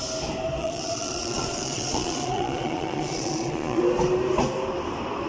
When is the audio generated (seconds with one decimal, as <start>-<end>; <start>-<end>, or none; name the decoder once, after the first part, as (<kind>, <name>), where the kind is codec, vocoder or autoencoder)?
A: 0.6-3.8 (vocoder, Vocos)